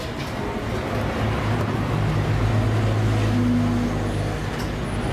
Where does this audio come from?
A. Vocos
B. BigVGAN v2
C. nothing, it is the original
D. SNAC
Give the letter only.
C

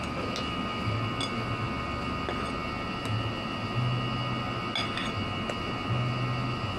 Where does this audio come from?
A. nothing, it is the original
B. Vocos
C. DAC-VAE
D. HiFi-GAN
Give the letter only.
A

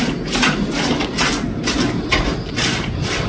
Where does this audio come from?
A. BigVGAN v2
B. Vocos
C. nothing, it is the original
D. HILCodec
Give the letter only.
C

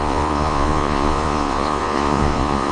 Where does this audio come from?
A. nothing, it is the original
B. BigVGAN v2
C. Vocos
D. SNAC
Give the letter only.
C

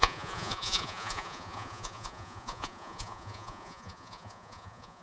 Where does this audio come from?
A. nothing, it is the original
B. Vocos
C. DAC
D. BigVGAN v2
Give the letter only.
B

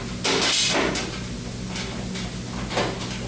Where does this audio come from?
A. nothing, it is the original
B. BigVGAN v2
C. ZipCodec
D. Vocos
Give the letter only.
A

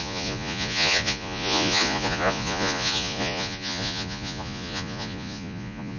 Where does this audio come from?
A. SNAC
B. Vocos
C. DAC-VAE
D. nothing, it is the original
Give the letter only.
B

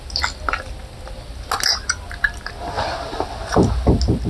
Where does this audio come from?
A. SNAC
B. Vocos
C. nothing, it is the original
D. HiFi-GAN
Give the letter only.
C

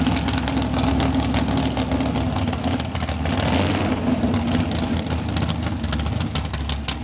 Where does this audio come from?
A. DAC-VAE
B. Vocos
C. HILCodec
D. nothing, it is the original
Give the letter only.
D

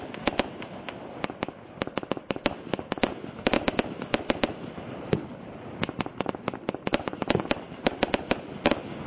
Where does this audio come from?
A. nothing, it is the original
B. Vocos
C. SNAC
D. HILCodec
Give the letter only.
A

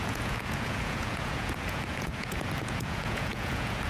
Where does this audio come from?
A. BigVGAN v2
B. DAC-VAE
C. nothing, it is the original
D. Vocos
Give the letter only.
D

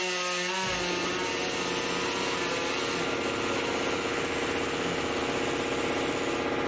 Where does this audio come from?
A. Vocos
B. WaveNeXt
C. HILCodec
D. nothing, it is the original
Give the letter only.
D